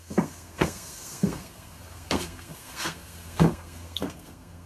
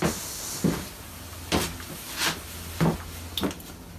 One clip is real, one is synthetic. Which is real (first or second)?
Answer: second